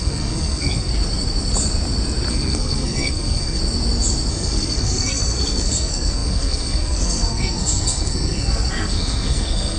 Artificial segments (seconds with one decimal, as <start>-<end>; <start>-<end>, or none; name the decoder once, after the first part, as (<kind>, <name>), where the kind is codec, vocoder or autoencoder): 0.0-0.9 (codec, SNAC); 2.3-3.6; 4.3-9.8